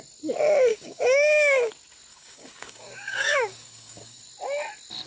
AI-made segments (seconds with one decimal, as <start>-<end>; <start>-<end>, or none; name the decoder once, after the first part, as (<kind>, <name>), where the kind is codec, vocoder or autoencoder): 0.7-1.7 (codec, DAC); 2.1-4.2